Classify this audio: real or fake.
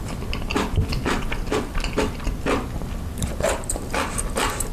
real